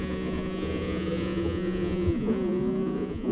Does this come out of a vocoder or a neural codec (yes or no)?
yes